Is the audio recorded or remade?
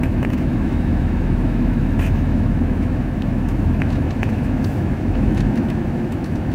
remade